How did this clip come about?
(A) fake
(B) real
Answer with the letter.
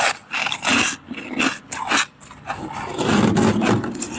B